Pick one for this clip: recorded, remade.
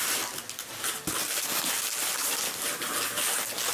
recorded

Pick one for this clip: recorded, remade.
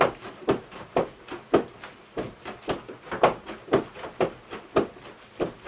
recorded